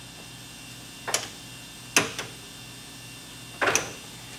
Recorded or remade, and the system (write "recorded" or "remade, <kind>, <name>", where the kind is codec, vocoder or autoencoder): recorded